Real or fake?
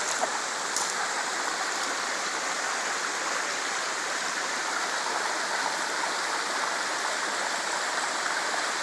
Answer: real